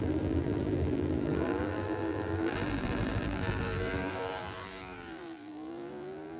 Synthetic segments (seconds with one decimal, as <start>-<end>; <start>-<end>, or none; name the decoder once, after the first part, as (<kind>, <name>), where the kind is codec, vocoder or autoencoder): 0.0-6.4 (vocoder, BigVGAN v2)